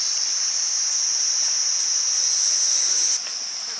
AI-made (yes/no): no